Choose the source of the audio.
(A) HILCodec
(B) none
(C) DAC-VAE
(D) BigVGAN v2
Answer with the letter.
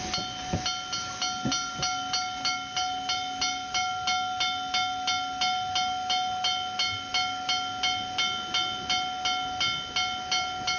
B